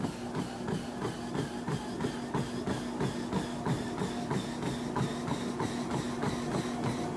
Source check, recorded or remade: recorded